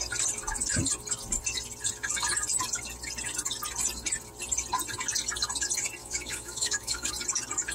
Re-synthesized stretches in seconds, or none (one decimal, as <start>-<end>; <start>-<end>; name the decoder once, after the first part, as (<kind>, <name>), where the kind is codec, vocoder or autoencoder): 6.0-7.1 (autoencoder, DAC-VAE)